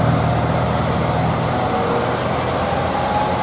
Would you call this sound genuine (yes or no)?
yes